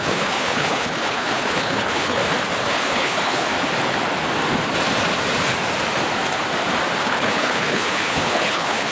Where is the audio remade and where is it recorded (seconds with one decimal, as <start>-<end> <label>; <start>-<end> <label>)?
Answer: 0.0-2.2 remade; 2.2-2.7 recorded; 2.7-3.5 remade; 3.5-7.0 recorded; 7.0-8.9 remade